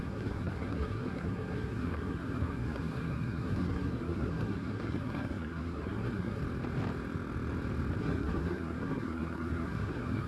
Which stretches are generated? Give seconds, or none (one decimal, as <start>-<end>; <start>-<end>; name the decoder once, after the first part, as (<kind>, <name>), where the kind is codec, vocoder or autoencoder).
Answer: 0.0-6.4 (codec, SNAC); 8.0-10.3